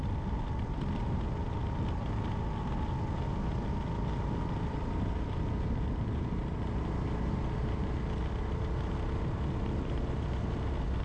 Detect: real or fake real